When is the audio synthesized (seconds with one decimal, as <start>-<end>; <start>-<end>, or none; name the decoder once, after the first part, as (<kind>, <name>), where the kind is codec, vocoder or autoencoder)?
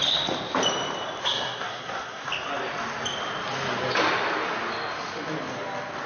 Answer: 1.2-2.3 (codec, SNAC)